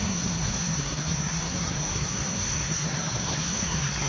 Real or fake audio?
fake